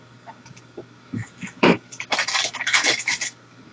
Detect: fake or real fake